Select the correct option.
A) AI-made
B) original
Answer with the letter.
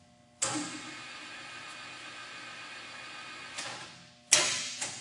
B